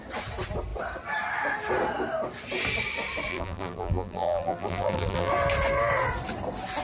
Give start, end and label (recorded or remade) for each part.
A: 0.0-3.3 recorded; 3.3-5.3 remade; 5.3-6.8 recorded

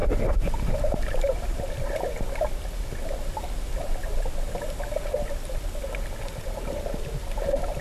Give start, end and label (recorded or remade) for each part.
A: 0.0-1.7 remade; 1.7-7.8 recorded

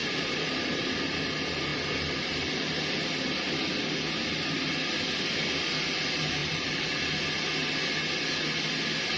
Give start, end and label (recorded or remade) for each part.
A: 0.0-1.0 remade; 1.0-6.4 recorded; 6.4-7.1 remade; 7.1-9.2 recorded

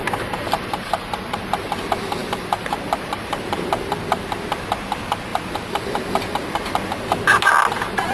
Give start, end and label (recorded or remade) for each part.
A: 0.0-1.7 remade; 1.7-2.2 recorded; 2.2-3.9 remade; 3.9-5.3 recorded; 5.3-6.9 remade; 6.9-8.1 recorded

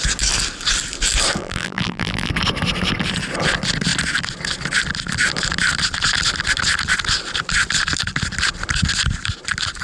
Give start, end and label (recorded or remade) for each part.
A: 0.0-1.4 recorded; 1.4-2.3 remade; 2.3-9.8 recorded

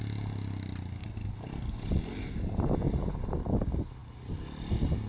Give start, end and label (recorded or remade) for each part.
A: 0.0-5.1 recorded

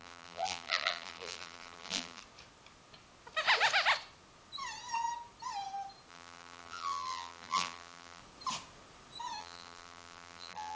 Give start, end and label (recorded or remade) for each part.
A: 0.0-2.2 remade; 2.2-6.1 recorded; 6.1-8.2 remade; 8.2-9.4 recorded; 9.4-10.8 remade

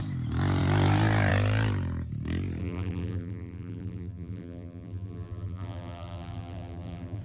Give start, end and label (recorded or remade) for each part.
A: 0.0-2.6 recorded; 2.6-7.2 remade